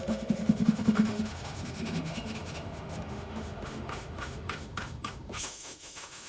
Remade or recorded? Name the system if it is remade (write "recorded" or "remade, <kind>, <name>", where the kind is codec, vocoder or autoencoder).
remade, autoencoder, DAC-VAE